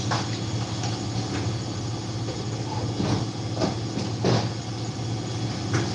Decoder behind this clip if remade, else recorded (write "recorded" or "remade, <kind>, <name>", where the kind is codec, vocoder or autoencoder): recorded